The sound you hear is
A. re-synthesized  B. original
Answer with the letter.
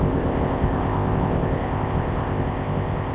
A